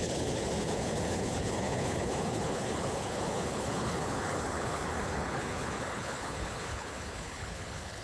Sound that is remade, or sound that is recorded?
remade